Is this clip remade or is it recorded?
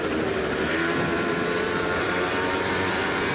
remade